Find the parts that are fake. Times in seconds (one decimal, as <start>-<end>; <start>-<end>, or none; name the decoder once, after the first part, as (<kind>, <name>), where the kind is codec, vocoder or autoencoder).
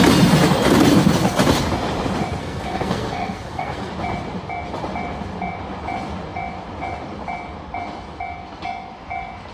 2.4-3.9 (codec, SNAC)